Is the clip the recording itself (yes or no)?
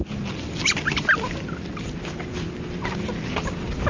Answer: yes